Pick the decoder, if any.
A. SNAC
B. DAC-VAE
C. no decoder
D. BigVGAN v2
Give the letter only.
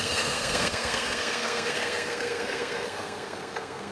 A